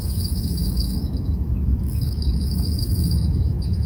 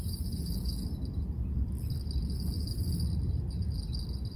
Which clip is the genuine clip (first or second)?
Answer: second